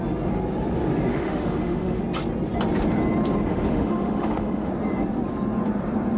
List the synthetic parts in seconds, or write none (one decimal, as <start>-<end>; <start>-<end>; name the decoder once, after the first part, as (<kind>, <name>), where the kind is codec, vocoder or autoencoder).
1.1-2.0 (autoencoder, DAC-VAE); 3.5-4.7